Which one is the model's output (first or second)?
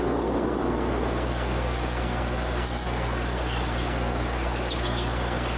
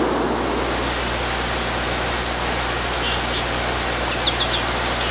first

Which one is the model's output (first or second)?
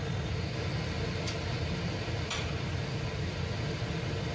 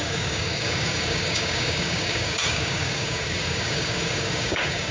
second